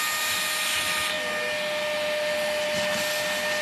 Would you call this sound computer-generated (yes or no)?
no